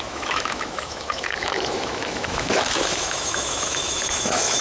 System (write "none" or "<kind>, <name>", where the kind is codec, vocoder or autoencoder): autoencoder, DAC-VAE